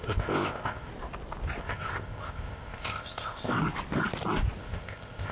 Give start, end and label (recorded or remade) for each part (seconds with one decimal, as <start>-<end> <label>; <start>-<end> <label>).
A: 0.0-0.9 remade; 0.9-1.6 recorded; 1.6-3.6 remade; 3.6-4.6 recorded; 4.6-5.3 remade